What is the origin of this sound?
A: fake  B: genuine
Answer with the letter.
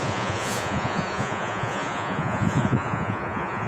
A